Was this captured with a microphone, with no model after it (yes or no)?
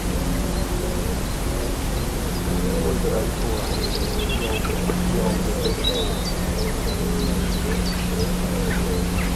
yes